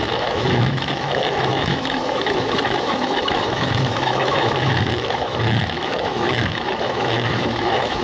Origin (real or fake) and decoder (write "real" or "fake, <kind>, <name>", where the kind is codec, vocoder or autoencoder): fake, autoencoder, DAC-VAE